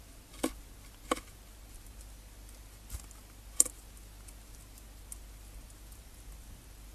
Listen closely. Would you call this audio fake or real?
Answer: real